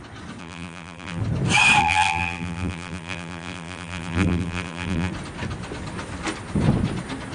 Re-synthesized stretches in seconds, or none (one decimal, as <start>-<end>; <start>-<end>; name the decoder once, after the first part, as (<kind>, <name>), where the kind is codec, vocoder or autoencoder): 0.4-1.2 (vocoder, BigVGAN v2); 1.8-5.1